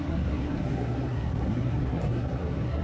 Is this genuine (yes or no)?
no